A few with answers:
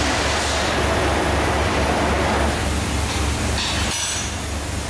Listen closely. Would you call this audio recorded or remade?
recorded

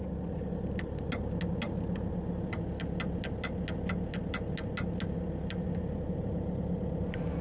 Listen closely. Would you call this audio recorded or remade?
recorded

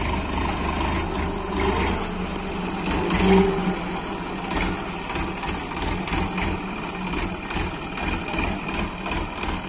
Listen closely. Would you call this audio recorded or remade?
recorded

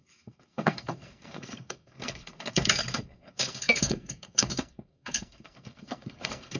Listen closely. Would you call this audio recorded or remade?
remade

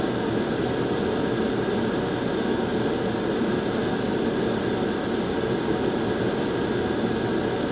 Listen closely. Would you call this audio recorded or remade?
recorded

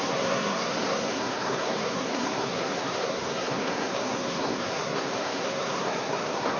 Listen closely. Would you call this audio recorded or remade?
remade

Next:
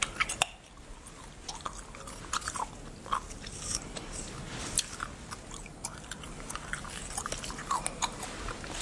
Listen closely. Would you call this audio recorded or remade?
recorded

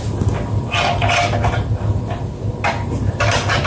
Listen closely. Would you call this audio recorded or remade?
recorded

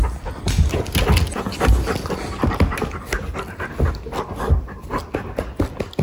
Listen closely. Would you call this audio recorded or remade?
recorded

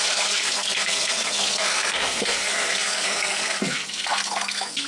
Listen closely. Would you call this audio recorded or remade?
remade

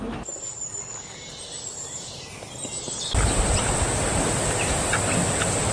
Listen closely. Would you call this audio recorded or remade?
recorded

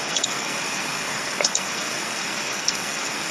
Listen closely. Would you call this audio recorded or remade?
remade